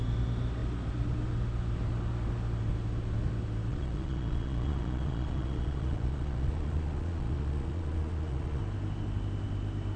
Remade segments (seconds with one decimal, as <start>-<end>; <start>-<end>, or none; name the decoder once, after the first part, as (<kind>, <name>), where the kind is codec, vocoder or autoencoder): 3.7-8.6 (vocoder, Vocos)